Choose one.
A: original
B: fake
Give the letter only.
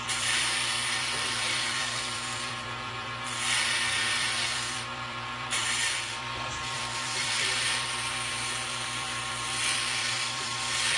B